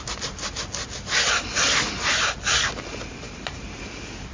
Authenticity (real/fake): real